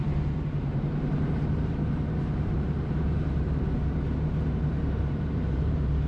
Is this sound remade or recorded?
remade